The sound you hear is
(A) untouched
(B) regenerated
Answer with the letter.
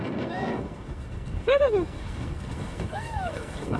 B